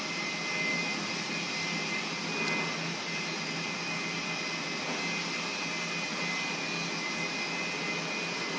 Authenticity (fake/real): real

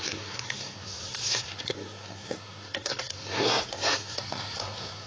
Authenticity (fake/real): fake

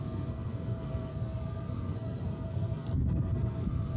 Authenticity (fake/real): fake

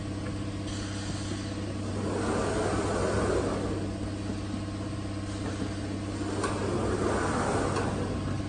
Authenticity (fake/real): real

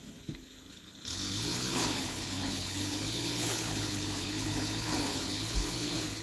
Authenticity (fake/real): fake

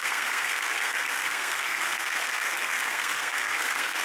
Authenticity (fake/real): fake